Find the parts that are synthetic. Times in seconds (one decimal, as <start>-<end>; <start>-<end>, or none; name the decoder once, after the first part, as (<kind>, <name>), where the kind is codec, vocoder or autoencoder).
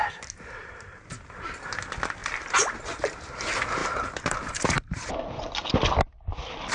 0.6-1.6 (vocoder, BigVGAN v2); 3.8-5.1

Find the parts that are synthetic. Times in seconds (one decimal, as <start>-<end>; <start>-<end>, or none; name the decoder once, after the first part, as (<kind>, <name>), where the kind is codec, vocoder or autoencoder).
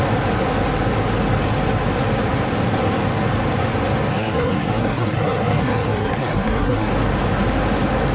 4.1-6.9 (codec, SNAC)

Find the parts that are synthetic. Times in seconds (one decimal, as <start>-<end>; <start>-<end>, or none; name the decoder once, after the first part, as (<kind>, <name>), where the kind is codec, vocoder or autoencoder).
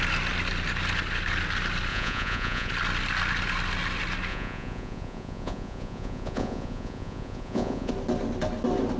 1.9-2.7 (vocoder, Vocos); 4.3-7.9